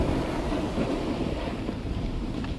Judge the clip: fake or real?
fake